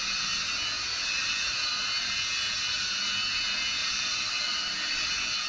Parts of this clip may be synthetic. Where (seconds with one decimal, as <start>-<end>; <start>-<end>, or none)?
0.9-1.8; 3.8-5.1